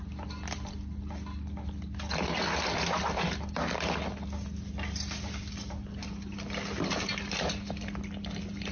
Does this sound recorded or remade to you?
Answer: recorded